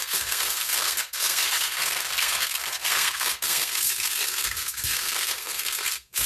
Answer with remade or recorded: remade